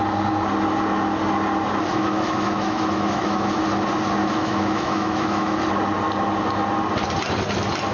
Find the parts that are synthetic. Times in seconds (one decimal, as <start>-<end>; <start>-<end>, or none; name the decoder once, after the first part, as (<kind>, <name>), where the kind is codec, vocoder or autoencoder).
1.9-3.6 (autoencoder, DAC-VAE); 4.2-5.6